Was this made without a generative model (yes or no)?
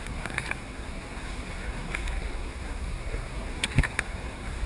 no